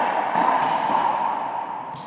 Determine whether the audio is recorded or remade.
recorded